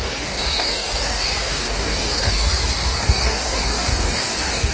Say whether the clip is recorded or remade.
remade